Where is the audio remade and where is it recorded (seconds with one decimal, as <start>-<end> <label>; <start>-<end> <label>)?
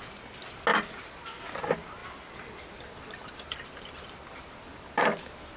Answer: 0.0-0.7 recorded; 0.7-1.4 remade; 1.4-2.0 recorded; 2.0-5.6 remade